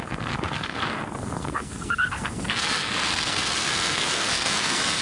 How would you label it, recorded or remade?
remade